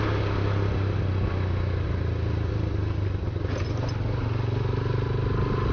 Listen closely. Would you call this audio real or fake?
real